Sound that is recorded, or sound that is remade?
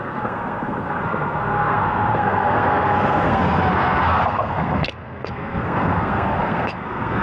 remade